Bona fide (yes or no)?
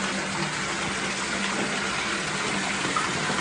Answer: yes